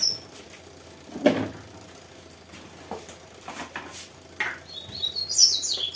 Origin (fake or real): real